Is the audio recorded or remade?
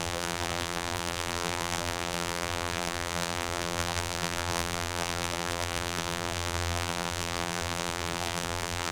remade